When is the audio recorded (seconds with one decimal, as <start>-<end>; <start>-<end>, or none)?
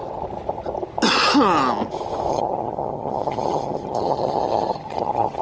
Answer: 0.0-2.3